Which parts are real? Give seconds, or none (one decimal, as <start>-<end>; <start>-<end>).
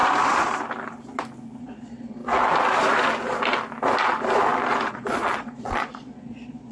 0.0-1.6; 2.2-4.9